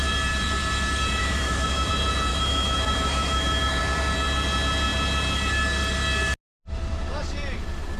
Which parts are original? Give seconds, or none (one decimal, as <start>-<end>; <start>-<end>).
0.0-1.2; 1.9-2.3; 3.8-8.0